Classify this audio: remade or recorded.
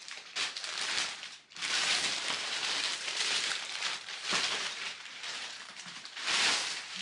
remade